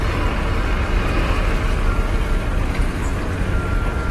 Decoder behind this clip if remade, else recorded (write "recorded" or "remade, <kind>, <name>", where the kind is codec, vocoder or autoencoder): recorded